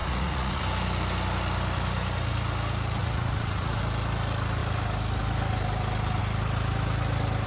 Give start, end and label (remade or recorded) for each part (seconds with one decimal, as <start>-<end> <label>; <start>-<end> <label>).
0.0-0.6 remade; 0.6-3.0 recorded; 3.0-3.8 remade; 3.8-7.5 recorded